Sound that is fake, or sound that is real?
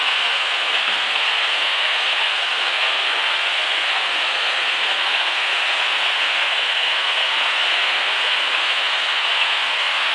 fake